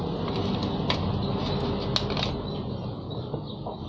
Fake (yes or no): no